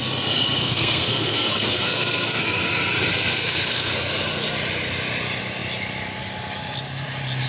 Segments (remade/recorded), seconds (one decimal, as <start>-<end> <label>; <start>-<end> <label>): 0.0-0.6 recorded; 0.6-2.4 remade; 2.4-3.1 recorded; 3.1-3.9 remade; 3.9-7.5 recorded